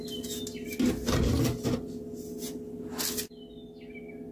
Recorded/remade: recorded